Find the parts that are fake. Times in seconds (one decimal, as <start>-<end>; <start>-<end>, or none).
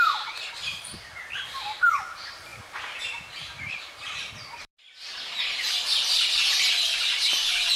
0.0-0.9; 1.9-4.7; 5.2-7.8